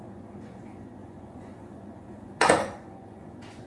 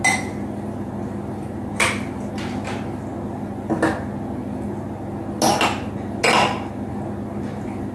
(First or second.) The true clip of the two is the second